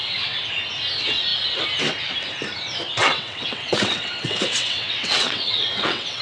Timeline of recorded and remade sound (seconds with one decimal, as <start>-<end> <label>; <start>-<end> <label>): 0.0-0.5 remade; 0.5-3.0 recorded; 3.0-6.2 remade